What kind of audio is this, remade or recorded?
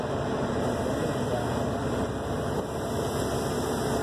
recorded